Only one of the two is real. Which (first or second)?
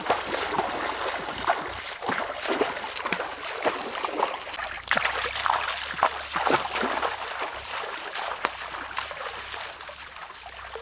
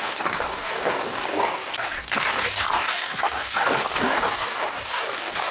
first